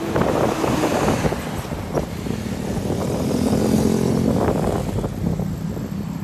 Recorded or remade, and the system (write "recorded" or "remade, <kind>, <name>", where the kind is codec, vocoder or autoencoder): recorded